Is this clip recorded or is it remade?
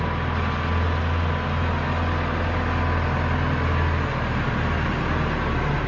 recorded